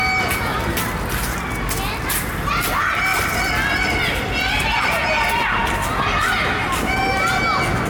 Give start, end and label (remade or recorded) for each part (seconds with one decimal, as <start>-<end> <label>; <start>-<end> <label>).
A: 0.0-3.1 recorded; 3.1-4.9 remade; 4.9-7.9 recorded

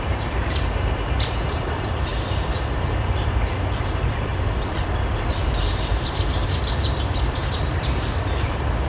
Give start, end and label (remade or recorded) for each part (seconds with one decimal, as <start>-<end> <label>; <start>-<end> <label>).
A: 0.0-2.1 remade; 2.1-5.8 recorded; 5.8-8.9 remade

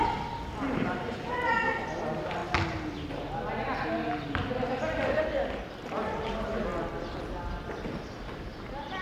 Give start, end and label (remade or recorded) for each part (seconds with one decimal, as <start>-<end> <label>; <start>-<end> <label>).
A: 0.0-9.0 recorded

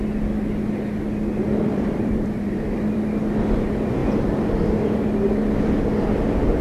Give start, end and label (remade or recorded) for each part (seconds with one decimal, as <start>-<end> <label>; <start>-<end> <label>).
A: 0.0-1.7 recorded; 1.7-3.0 remade; 3.0-6.6 recorded